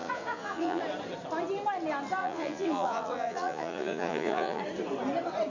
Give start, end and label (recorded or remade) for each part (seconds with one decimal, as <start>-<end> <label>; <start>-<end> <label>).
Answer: 0.0-0.8 remade; 0.8-2.2 recorded; 2.2-4.6 remade; 4.6-5.5 recorded